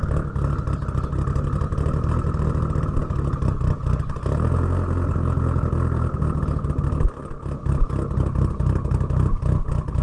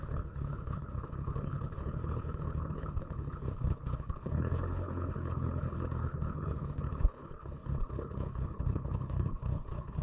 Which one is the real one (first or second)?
first